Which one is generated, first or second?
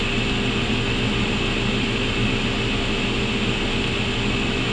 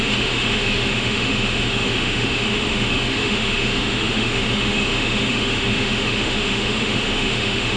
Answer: second